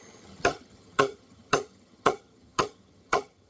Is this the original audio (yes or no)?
no